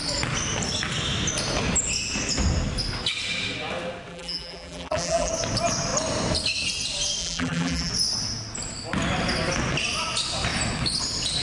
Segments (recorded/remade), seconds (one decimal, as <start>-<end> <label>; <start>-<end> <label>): 0.0-4.1 recorded; 4.1-5.3 remade; 5.3-7.2 recorded; 7.2-7.9 remade; 7.9-11.4 recorded